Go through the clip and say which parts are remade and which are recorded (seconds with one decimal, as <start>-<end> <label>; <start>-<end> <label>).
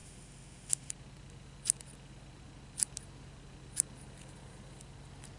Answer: 0.0-0.9 remade; 0.9-5.4 recorded